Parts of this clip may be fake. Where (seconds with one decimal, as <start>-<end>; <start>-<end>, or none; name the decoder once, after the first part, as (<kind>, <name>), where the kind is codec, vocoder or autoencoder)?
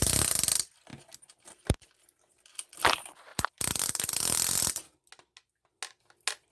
3.3-5.1 (vocoder, BigVGAN v2)